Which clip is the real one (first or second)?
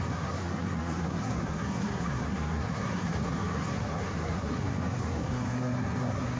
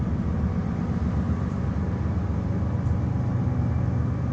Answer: second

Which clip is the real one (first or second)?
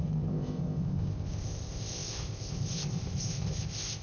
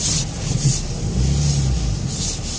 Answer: second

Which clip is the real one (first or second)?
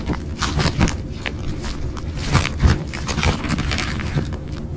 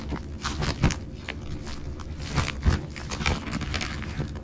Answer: second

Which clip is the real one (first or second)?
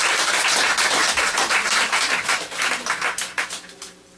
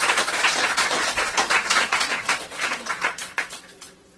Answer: first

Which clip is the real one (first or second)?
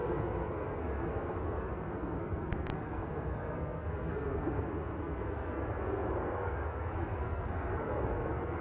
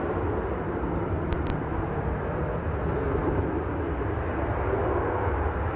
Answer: second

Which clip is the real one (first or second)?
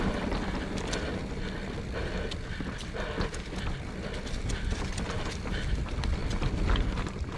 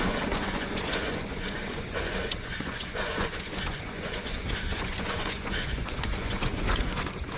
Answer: first